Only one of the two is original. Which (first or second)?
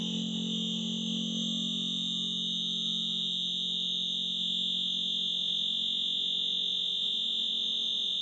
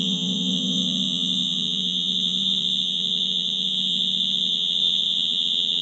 first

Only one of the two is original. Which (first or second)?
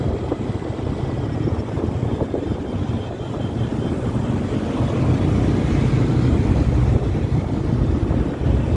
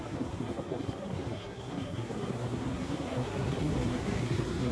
first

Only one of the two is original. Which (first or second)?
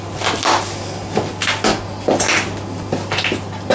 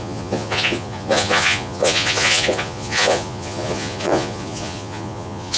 first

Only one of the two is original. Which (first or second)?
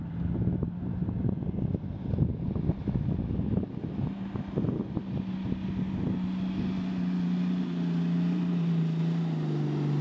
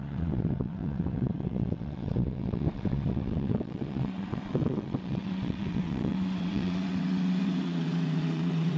first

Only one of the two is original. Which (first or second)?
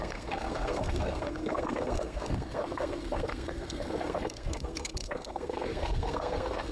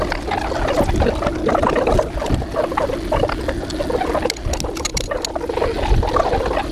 second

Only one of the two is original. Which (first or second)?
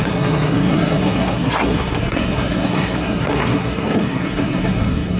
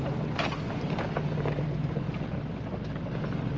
second